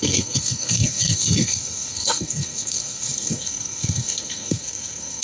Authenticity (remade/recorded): remade